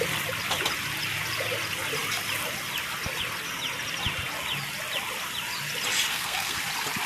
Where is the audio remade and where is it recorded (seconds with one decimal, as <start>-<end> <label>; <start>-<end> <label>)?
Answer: 0.0-6.1 recorded; 6.1-6.6 remade; 6.6-7.1 recorded